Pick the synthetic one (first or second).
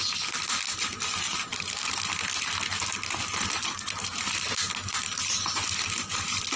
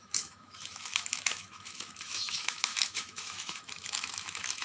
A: second